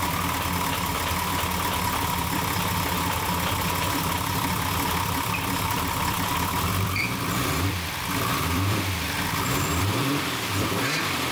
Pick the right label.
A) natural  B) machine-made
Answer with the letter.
B